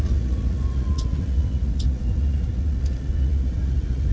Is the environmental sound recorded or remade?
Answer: remade